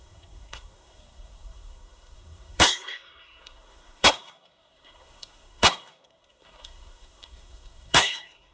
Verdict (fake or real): fake